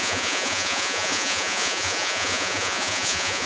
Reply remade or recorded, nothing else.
remade